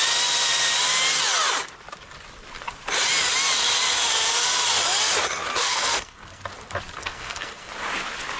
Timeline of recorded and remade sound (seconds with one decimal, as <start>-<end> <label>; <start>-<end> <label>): 0.0-5.6 recorded; 5.6-6.4 remade; 6.4-7.0 recorded; 7.0-7.7 remade; 7.7-8.4 recorded